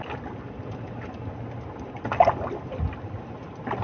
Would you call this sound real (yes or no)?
yes